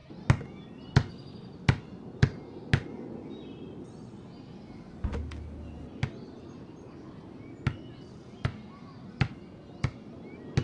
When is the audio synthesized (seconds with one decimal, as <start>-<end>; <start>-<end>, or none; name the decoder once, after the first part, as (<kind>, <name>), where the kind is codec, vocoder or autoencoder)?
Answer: none